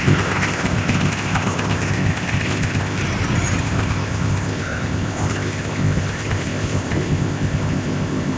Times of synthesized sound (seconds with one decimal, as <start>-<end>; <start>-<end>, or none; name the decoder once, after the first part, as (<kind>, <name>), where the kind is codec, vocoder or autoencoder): 0.0-3.0 (codec, ZipCodec); 3.6-8.4